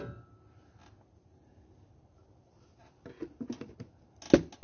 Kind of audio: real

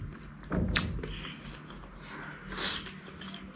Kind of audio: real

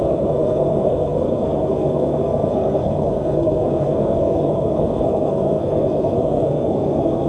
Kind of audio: fake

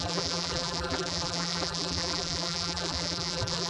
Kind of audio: fake